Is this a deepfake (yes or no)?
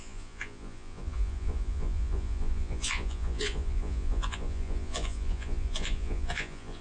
yes